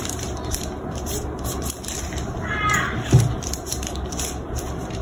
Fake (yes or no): yes